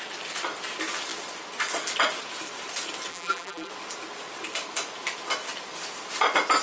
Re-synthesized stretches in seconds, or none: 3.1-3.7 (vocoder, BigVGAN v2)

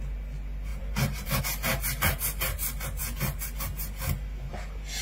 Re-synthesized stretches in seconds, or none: 0.7-1.4 (vocoder, BigVGAN v2)

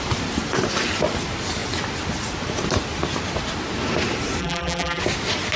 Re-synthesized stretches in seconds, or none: 4.4-5.0 (vocoder, BigVGAN v2)

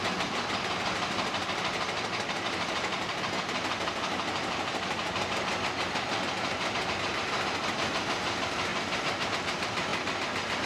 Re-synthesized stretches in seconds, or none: none

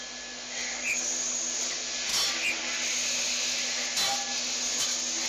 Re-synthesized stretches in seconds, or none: none

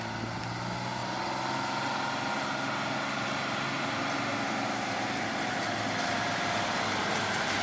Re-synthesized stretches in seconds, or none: none